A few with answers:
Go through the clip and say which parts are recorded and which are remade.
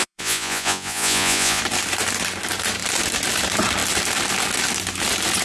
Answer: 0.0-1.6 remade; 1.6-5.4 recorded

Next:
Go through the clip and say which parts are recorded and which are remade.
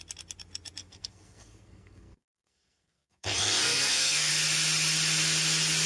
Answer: 0.0-0.8 recorded; 0.8-4.3 remade; 4.3-5.9 recorded